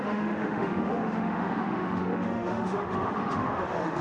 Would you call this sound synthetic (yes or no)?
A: yes